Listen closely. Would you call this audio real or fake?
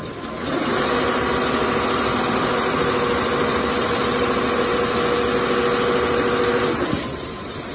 real